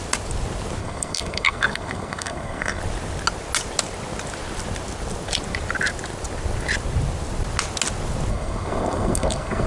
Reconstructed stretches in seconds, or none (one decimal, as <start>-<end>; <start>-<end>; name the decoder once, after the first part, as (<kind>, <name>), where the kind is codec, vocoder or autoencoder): 0.8-2.8 (codec, SNAC); 8.3-9.7